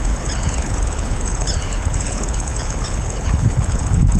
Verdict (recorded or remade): remade